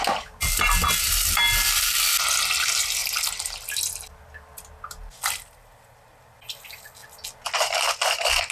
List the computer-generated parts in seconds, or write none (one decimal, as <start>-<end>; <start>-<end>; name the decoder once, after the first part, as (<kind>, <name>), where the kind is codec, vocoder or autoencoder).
none